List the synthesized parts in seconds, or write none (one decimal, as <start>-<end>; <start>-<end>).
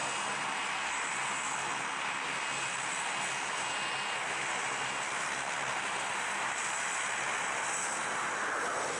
none